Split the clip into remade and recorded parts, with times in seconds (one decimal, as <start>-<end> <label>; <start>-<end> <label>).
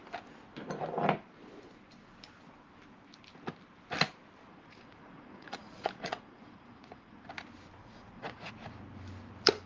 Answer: 0.0-4.5 recorded; 4.5-7.3 remade; 7.3-7.8 recorded; 7.8-8.5 remade; 8.5-9.7 recorded